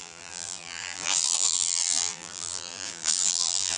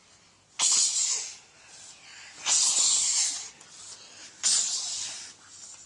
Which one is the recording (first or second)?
second